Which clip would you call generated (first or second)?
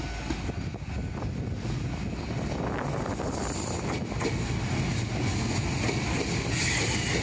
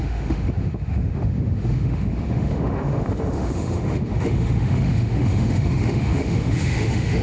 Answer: second